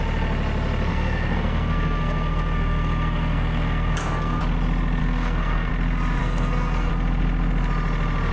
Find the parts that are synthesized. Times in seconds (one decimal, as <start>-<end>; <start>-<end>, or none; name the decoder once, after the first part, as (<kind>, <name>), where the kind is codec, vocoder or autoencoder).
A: 0.9-4.4 (codec, SNAC); 5.0-5.7; 6.2-6.9

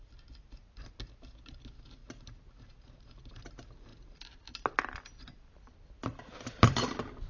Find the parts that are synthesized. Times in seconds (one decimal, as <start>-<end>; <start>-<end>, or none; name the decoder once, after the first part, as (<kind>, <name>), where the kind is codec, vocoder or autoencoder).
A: none

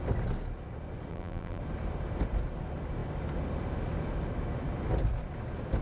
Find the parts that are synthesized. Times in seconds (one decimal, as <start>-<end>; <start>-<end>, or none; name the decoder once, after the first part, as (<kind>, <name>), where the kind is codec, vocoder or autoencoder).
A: 1.1-1.6 (vocoder, BigVGAN v2)

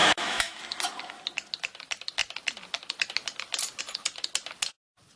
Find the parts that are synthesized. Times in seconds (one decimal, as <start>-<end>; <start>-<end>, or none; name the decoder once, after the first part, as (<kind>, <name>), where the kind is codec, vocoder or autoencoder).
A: 0.0-0.6 (autoencoder, DAC-VAE)

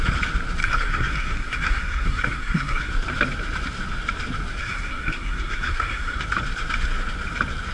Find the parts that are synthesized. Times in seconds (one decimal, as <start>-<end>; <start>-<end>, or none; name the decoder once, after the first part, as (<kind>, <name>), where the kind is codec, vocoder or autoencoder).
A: 0.6-2.9 (codec, SNAC); 4.6-6.2

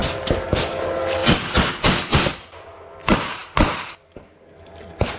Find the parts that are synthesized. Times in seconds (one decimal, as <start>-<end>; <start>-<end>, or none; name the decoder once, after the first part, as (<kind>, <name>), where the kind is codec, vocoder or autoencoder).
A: none

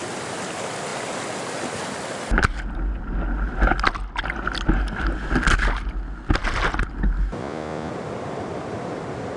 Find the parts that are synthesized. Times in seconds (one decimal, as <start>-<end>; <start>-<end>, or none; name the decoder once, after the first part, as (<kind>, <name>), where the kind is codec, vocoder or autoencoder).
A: 7.4-7.9 (vocoder, Vocos)